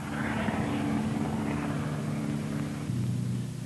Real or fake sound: real